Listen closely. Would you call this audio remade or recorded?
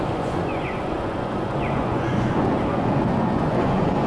remade